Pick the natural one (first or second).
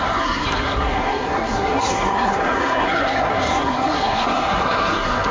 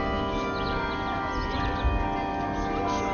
second